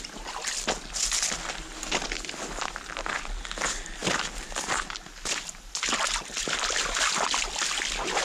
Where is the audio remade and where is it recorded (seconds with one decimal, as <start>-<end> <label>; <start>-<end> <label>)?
0.0-8.2 recorded